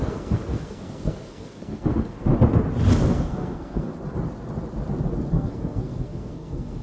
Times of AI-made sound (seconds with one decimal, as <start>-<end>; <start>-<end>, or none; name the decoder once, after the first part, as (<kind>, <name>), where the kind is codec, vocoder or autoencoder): 0.0-2.3 (codec, SNAC); 3.0-3.9; 5.3-6.8